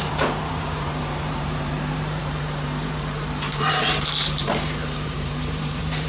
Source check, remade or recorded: remade